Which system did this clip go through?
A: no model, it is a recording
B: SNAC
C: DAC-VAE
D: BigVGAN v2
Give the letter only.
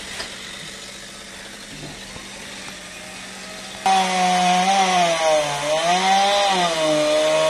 A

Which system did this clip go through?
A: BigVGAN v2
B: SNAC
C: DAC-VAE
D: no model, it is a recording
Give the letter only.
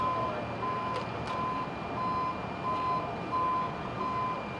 D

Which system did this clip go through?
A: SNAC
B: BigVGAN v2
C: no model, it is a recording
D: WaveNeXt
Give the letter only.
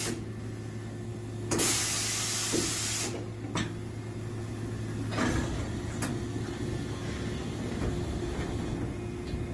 C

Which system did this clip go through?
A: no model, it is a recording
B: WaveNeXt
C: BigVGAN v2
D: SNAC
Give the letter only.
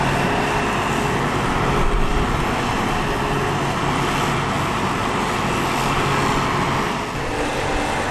A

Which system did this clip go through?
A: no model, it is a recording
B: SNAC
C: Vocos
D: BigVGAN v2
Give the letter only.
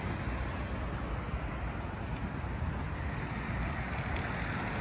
A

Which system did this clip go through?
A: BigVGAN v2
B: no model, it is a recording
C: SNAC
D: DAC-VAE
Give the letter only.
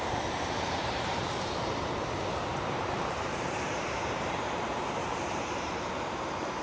A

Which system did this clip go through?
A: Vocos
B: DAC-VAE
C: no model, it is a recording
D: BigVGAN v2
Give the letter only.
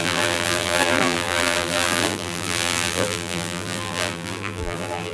D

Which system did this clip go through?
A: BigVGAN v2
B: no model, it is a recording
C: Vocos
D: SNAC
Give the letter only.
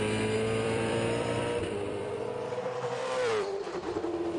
A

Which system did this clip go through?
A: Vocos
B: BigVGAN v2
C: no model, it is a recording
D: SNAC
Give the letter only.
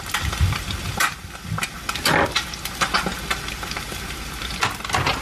C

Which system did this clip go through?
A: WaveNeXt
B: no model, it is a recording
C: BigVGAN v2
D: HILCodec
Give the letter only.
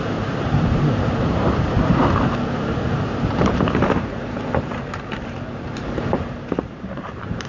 C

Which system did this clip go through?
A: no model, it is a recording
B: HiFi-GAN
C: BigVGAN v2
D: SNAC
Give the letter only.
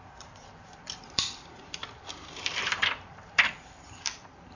C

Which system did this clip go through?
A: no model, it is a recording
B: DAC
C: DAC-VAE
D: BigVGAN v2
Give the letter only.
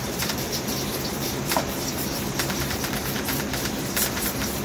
D